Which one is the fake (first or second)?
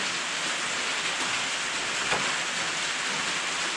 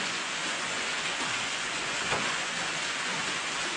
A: second